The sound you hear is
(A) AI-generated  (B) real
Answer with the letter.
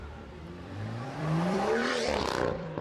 A